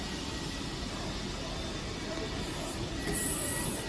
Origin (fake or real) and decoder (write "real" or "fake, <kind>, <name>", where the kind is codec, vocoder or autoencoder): fake, vocoder, BigVGAN v2